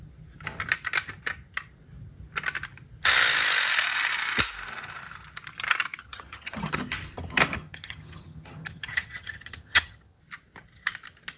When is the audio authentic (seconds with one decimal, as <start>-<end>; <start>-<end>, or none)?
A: 0.0-6.0; 6.8-7.6; 10.2-11.4